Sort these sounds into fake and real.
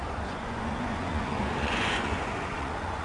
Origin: fake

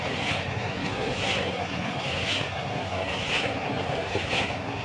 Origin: fake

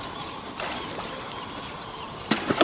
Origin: real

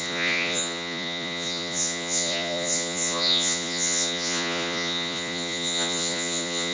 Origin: fake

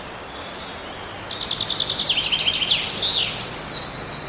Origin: real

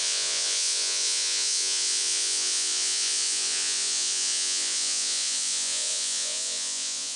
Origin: fake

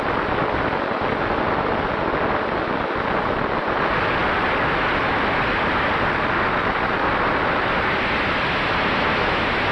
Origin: real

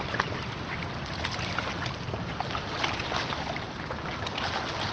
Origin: real